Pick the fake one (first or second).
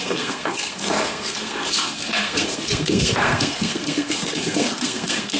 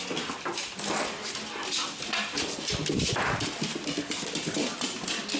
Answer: first